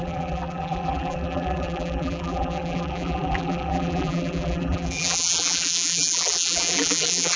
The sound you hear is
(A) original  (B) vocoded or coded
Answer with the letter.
B